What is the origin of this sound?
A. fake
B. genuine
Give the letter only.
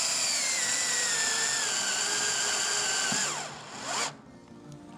B